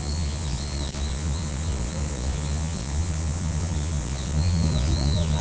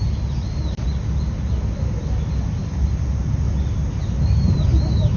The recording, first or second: second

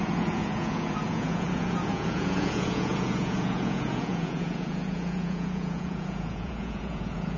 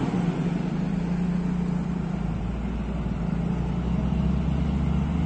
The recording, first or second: second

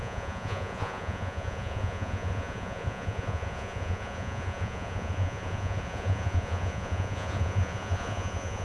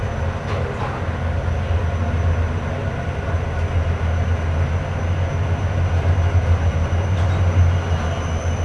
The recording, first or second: second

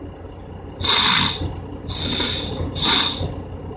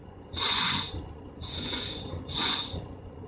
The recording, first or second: first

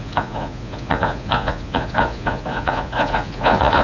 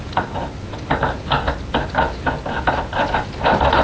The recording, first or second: second